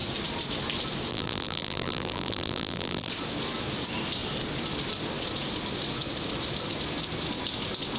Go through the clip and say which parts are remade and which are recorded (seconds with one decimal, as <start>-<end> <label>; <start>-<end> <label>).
0.0-1.1 recorded; 1.1-3.1 remade; 3.1-8.0 recorded